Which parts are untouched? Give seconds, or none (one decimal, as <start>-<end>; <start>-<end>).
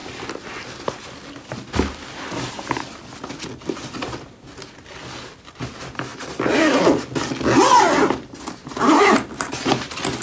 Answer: 0.0-10.2